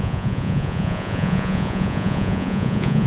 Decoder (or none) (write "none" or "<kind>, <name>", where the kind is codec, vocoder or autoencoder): vocoder, Vocos